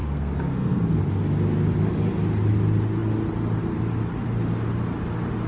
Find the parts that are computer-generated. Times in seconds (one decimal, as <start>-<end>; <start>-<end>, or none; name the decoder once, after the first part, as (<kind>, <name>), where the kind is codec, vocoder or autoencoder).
0.0-1.0 (codec, SNAC)